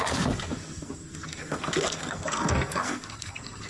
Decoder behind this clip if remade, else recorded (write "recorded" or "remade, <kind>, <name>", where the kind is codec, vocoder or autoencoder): remade, codec, SNAC